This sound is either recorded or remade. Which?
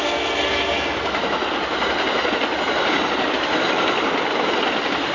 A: recorded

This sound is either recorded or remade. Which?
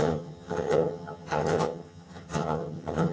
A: remade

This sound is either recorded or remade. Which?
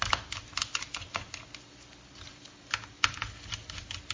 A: recorded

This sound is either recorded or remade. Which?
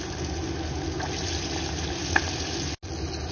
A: recorded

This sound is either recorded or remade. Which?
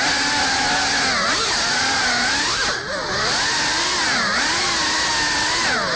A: recorded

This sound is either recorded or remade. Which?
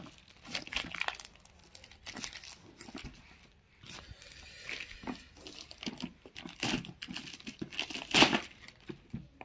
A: recorded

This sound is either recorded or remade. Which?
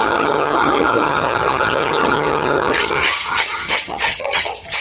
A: remade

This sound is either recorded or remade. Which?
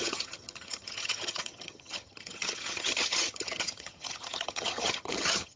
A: remade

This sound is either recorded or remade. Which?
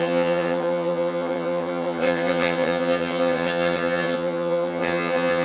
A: remade